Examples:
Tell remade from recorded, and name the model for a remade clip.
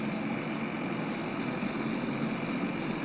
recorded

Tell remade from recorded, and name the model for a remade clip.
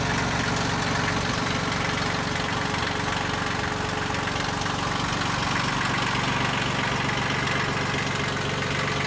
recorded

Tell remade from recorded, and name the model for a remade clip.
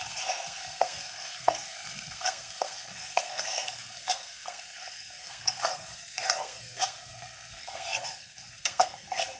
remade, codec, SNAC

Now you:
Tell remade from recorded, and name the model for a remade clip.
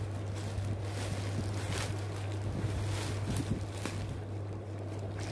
recorded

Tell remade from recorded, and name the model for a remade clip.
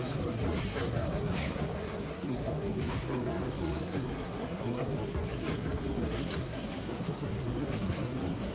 remade, codec, SNAC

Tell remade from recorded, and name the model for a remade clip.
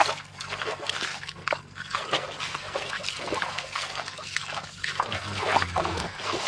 remade, codec, SNAC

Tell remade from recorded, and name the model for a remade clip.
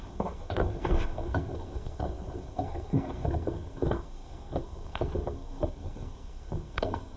remade, codec, SNAC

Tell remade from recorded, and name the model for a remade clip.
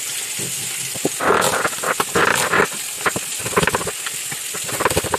recorded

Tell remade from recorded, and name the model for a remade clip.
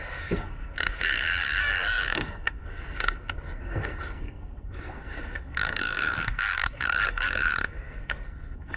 remade, codec, SNAC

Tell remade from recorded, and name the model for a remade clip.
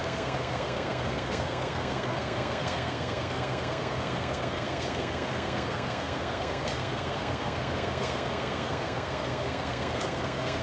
remade, codec, SNAC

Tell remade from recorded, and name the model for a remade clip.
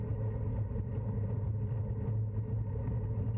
recorded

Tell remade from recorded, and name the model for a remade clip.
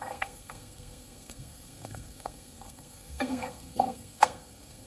remade, codec, SNAC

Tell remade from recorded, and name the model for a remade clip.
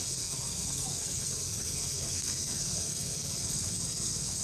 remade, codec, SNAC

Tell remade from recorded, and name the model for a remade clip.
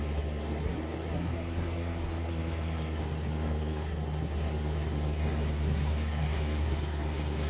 remade, codec, SNAC